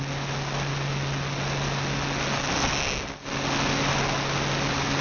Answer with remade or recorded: recorded